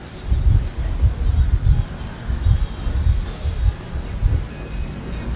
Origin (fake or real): real